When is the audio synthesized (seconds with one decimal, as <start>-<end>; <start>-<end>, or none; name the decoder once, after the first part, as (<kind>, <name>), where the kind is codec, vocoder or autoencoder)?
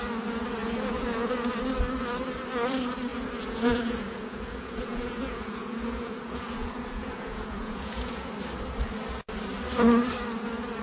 0.6-1.5 (vocoder, Vocos); 3.1-8.3